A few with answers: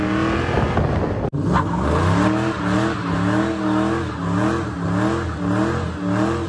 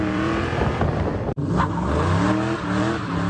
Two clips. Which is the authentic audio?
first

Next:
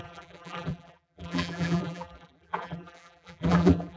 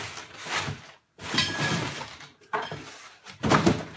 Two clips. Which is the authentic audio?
second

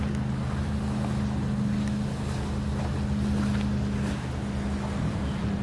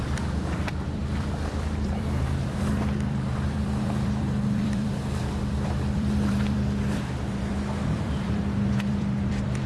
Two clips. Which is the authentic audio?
first